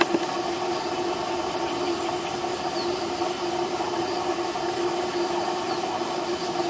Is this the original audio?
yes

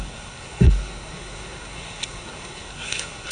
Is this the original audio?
no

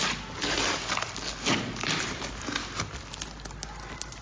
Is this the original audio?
yes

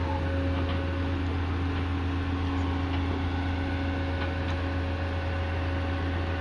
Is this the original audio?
yes